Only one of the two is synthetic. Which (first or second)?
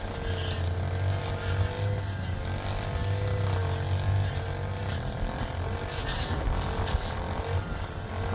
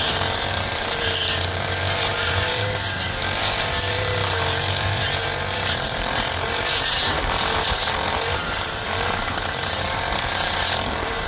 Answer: second